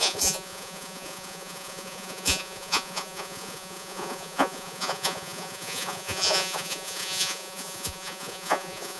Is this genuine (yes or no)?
no